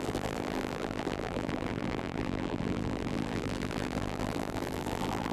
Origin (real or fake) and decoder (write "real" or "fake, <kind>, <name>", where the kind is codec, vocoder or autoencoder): fake, vocoder, BigVGAN v2